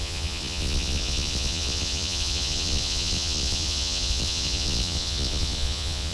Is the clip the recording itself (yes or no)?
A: no